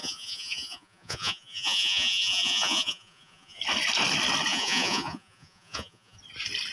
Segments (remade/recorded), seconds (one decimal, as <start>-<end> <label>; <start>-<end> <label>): 0.0-3.6 remade; 3.6-4.5 recorded; 4.5-6.2 remade; 6.2-6.7 recorded